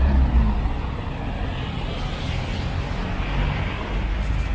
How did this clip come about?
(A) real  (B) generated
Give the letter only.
A